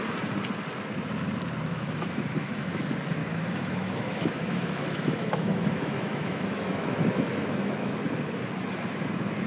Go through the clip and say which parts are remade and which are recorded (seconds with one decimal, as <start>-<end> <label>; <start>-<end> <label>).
0.0-1.7 recorded; 1.7-2.8 remade; 2.8-3.2 recorded; 3.2-7.9 remade; 7.9-9.5 recorded